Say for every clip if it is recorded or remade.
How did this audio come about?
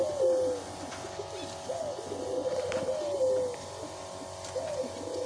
recorded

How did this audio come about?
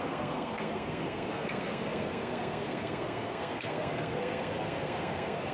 remade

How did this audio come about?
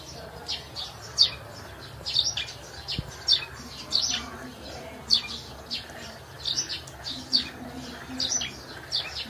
recorded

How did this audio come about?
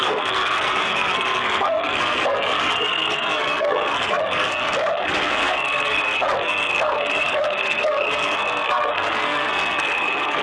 remade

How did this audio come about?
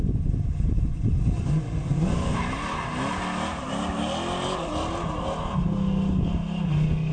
recorded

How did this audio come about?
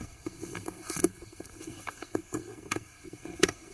remade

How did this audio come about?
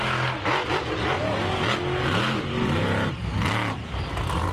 recorded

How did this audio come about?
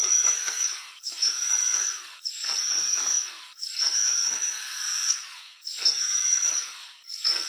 remade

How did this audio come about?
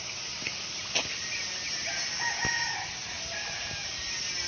recorded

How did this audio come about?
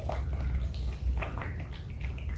recorded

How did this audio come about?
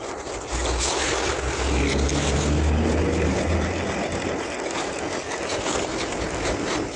recorded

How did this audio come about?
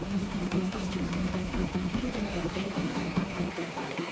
remade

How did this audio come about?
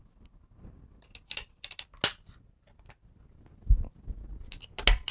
recorded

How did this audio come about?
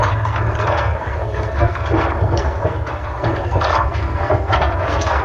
remade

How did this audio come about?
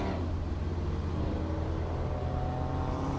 recorded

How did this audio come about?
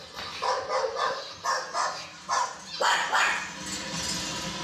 recorded